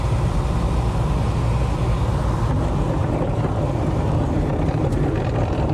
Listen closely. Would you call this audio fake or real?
real